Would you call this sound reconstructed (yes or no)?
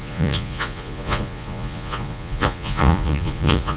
yes